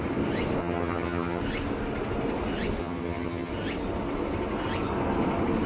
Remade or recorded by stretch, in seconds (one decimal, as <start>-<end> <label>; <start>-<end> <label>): 0.0-0.6 recorded; 0.6-1.4 remade; 1.4-2.8 recorded; 2.8-3.5 remade; 3.5-5.7 recorded